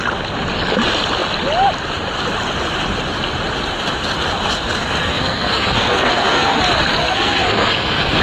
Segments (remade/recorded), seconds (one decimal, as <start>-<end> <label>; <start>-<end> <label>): 0.0-5.0 recorded; 5.0-6.6 remade; 6.6-7.0 recorded; 7.0-8.2 remade